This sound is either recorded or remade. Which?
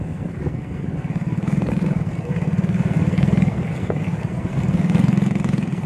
remade